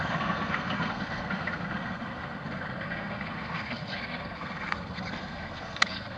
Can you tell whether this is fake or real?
fake